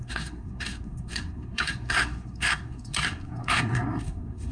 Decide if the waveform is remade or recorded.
remade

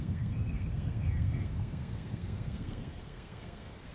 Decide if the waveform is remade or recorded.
remade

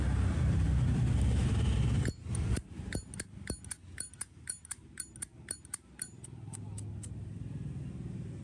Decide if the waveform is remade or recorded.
recorded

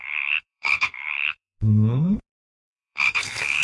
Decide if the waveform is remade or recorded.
remade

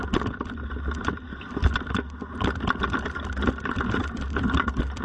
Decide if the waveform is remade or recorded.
recorded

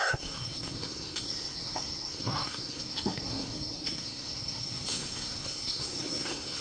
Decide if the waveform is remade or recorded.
remade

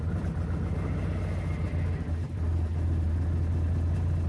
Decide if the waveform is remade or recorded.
recorded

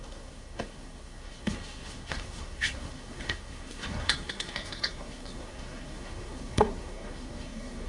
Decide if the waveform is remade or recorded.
remade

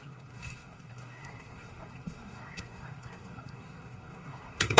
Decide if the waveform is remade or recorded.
remade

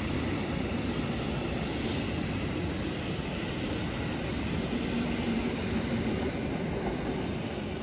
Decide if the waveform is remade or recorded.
recorded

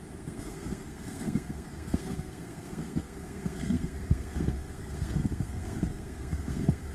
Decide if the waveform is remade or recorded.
remade